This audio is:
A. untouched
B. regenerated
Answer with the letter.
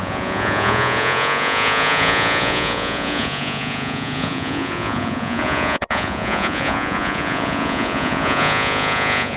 B